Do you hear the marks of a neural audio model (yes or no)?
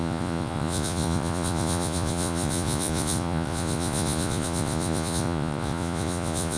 yes